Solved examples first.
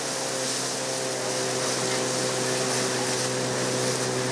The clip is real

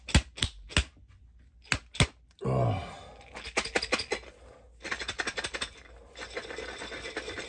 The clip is real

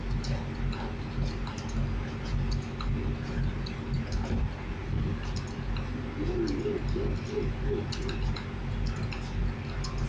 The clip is real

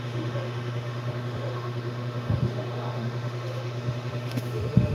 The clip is fake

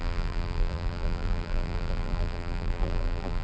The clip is fake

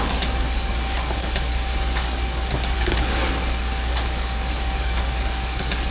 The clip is fake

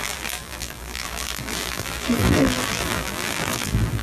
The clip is fake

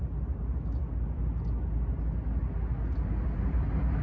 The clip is real